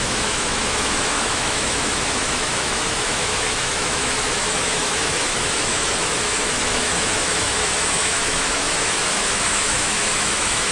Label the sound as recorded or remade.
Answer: remade